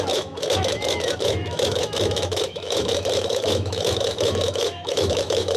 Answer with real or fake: fake